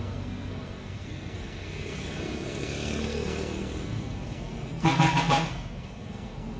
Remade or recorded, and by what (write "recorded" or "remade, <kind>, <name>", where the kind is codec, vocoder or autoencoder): remade, codec, SNAC